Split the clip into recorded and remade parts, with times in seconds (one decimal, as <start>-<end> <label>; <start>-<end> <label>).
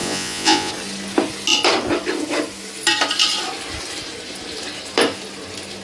0.0-0.7 remade; 0.7-5.8 recorded